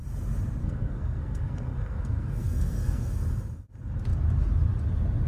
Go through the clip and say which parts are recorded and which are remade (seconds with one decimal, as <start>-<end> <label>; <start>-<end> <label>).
0.0-0.6 recorded; 0.6-3.2 remade; 3.2-5.3 recorded